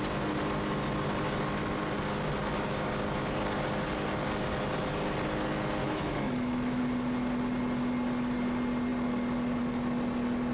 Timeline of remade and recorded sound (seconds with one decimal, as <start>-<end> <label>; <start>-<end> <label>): 0.0-5.8 recorded; 5.8-6.8 remade; 6.8-10.5 recorded